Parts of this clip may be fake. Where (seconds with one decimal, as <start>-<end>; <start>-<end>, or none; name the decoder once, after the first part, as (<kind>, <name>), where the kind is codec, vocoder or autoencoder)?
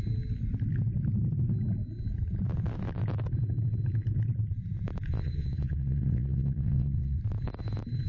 5.1-7.2 (vocoder, WaveNeXt)